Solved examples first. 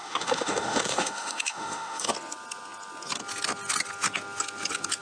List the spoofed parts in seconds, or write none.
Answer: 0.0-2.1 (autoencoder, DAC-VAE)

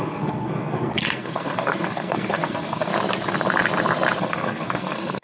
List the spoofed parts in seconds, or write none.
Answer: 0.0-2.9 (codec, SNAC); 4.2-5.2

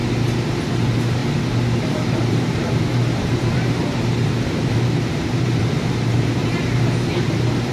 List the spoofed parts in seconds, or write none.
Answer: 0.6-1.2 (vocoder, BigVGAN v2); 1.8-7.7

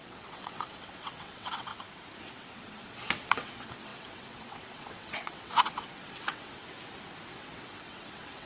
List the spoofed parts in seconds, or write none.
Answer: 0.0-1.7 (vocoder, WaveNeXt); 2.2-6.6; 7.3-8.5

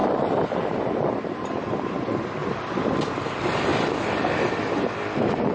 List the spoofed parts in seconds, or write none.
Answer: 0.0-3.7 (vocoder, BigVGAN v2); 4.5-5.5

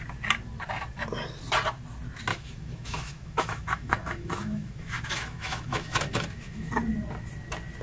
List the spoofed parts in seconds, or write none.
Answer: 2.3-6.7 (autoencoder, DAC-VAE)